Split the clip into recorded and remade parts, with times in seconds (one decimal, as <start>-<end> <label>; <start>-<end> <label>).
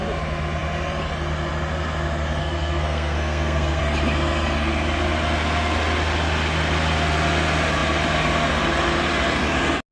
0.0-2.4 recorded; 2.4-3.8 remade; 3.8-9.9 recorded